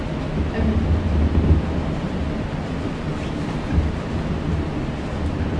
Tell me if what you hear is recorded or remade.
recorded